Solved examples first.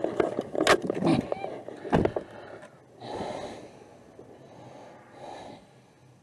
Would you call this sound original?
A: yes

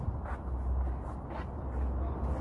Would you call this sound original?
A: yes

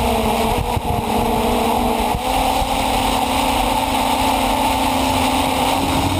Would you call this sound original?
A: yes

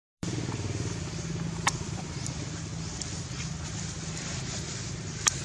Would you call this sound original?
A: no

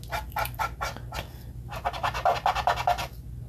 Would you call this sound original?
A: yes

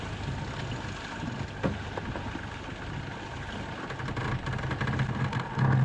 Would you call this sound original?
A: yes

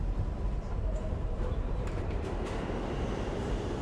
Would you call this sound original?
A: no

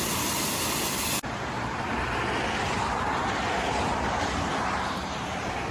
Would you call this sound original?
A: yes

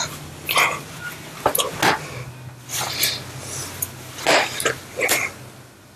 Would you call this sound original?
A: yes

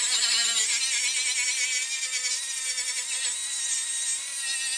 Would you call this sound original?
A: yes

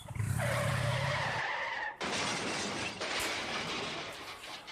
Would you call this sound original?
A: no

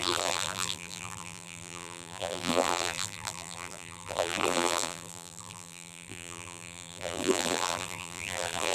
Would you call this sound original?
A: no